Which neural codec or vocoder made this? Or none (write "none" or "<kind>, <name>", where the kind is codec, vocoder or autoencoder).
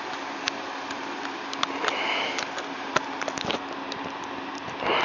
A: none